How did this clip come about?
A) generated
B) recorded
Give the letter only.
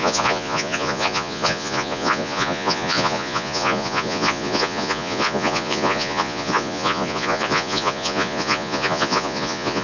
A